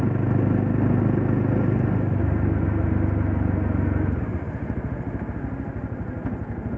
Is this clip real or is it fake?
real